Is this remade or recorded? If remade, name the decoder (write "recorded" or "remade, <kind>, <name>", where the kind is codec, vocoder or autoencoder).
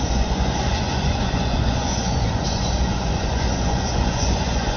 remade, vocoder, Vocos